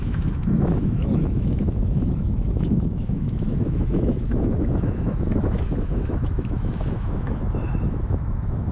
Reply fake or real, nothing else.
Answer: fake